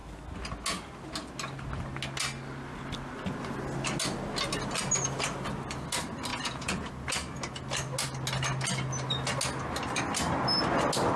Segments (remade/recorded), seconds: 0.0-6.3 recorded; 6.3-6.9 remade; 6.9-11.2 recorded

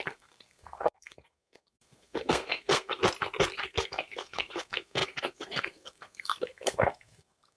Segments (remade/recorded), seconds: 0.0-3.0 remade; 3.0-3.6 recorded; 3.6-7.6 remade

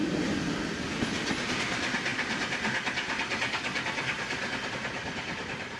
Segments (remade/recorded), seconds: 0.0-5.8 recorded